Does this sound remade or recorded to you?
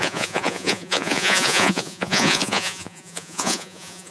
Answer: remade